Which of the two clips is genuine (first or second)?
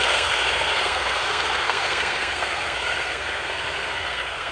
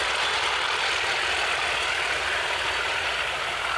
second